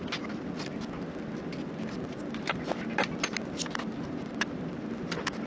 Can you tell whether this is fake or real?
real